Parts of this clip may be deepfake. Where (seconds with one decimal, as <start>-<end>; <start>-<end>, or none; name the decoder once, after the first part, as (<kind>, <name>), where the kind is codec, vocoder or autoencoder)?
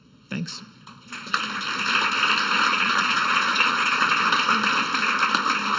0.5-1.4 (vocoder, Vocos); 2.7-4.1